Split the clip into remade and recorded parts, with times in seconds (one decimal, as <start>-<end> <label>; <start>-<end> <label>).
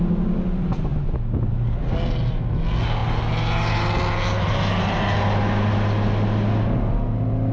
0.0-7.5 recorded